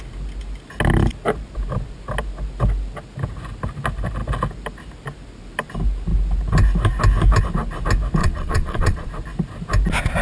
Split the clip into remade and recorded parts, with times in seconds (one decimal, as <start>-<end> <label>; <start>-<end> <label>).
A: 0.0-8.2 recorded; 8.2-9.1 remade; 9.1-10.2 recorded